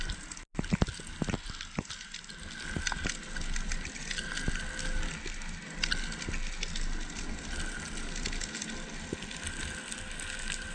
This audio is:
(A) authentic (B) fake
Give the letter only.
A